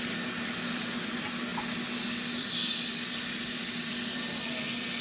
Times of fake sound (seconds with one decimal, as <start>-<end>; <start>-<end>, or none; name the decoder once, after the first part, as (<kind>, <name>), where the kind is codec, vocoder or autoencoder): none